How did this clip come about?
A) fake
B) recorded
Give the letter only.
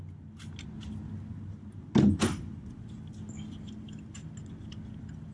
B